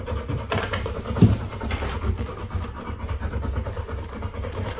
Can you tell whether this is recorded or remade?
remade